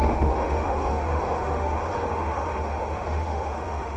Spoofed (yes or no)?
yes